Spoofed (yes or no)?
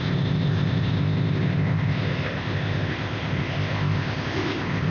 yes